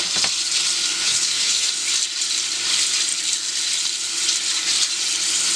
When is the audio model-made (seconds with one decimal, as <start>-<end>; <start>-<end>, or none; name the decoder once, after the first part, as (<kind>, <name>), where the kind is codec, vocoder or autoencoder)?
0.9-1.7 (autoencoder, DAC-VAE)